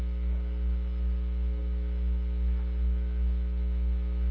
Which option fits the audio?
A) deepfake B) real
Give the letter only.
B